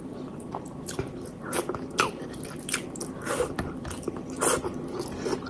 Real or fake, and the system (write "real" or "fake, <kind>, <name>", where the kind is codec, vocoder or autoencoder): real